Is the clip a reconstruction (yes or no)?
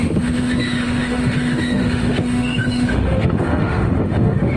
yes